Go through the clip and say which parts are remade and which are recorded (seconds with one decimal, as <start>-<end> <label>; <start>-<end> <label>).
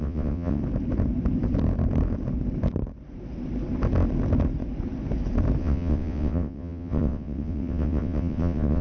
0.0-0.6 remade; 0.6-5.6 recorded; 5.6-8.8 remade